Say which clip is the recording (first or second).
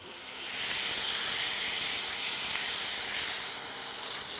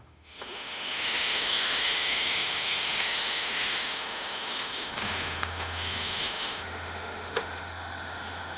first